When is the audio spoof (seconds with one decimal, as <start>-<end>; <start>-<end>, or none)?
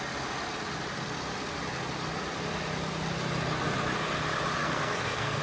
4.6-5.4